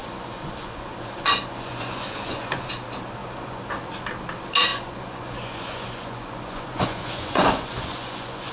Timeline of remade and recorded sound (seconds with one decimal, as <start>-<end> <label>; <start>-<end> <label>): 0.0-2.6 remade; 2.6-3.2 recorded; 3.2-3.7 remade; 3.7-4.7 recorded; 4.7-8.5 remade